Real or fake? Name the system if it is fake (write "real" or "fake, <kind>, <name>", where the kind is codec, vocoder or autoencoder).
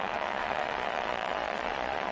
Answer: fake, vocoder, Vocos